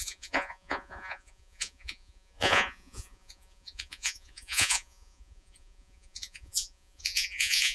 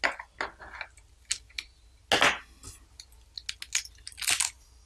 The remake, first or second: first